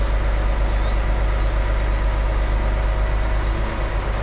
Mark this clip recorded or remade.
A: recorded